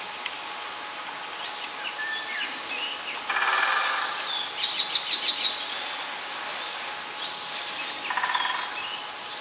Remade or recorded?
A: recorded